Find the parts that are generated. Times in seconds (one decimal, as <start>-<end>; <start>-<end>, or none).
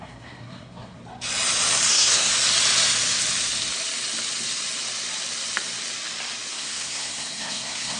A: 0.0-1.0; 1.9-2.3; 6.5-8.0